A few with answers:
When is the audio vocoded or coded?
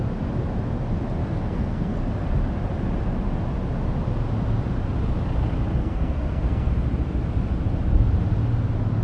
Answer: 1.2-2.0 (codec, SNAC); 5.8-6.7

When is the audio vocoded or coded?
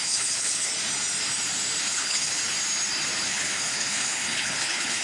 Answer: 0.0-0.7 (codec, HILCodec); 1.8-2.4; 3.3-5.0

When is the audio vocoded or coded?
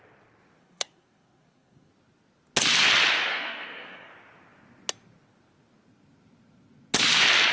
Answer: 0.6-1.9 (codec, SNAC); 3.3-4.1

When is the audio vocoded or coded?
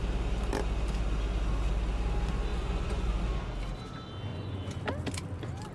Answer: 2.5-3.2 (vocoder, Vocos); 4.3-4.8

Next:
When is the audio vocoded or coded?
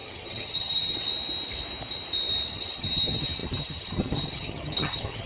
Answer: 0.0-1.0 (vocoder, HiFi-GAN); 2.5-5.3